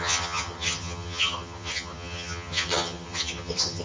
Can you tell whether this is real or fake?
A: fake